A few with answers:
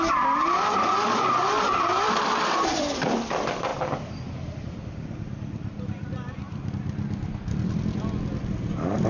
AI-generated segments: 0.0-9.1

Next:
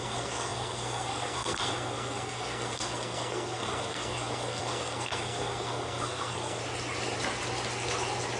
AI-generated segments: 0.0-6.6

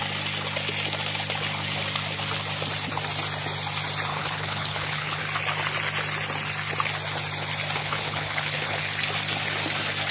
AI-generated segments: 4.1-5.2; 7.8-8.8

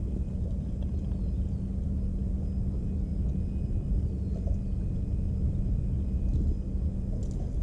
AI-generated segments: none